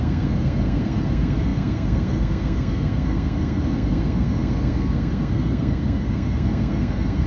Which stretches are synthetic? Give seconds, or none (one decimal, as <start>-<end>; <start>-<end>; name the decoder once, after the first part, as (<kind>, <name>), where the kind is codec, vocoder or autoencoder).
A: 0.0-7.3 (codec, SNAC)